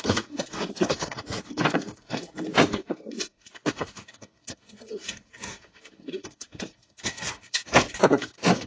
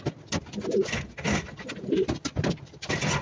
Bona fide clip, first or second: second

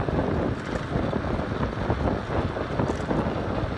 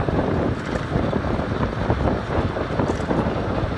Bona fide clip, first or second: first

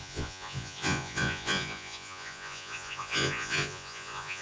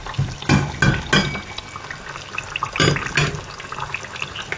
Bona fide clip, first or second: second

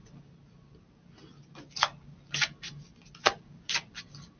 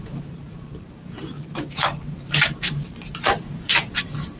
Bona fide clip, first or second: first